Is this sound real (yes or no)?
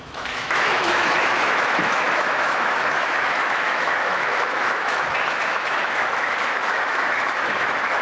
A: no